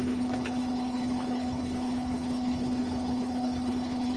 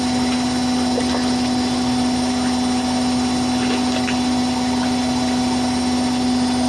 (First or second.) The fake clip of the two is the first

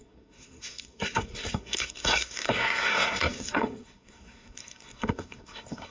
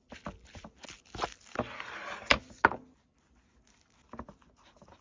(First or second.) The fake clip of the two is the first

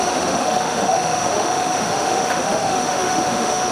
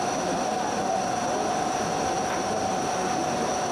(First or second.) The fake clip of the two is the first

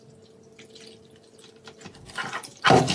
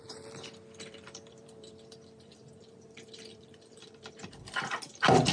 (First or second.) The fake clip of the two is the second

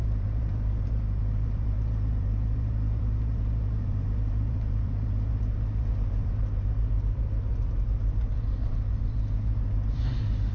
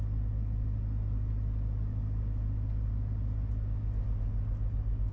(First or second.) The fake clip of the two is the first